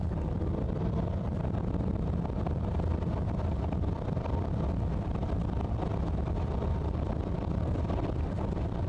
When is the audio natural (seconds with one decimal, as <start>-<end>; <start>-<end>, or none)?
none